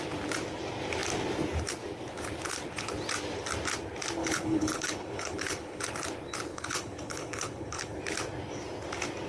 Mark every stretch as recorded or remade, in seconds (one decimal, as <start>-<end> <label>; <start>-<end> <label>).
0.0-4.2 recorded; 4.2-5.8 remade; 5.8-6.5 recorded; 6.5-7.9 remade; 7.9-9.3 recorded